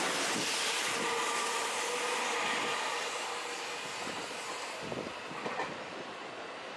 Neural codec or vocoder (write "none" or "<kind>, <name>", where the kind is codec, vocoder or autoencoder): none